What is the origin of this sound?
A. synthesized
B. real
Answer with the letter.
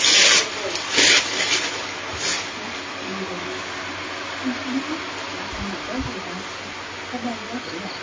B